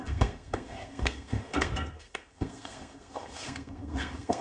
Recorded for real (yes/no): no